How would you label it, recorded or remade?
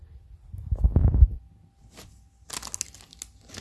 recorded